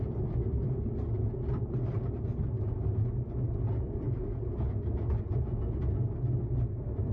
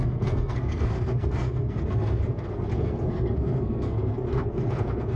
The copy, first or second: second